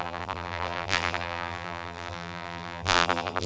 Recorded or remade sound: remade